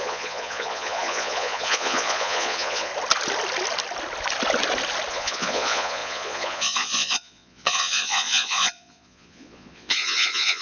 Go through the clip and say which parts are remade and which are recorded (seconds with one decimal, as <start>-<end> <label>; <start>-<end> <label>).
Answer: 0.0-2.9 remade; 2.9-5.1 recorded; 5.1-10.6 remade